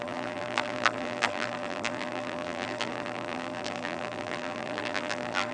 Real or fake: fake